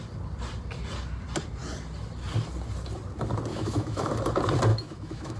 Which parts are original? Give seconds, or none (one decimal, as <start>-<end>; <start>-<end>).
0.0-3.5; 4.1-4.7